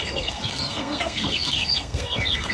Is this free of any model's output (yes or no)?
no